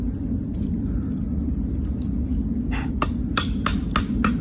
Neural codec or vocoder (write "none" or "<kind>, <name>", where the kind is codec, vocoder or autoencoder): none